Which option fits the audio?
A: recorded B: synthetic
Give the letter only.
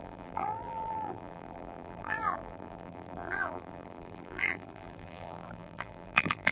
B